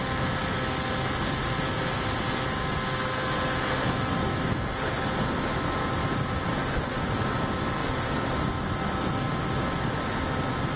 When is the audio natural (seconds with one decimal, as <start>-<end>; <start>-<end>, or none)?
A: 0.0-1.4; 2.3-6.0; 6.9-10.8